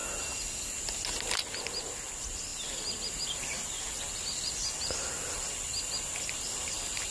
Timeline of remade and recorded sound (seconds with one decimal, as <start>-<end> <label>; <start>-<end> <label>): 0.0-7.1 recorded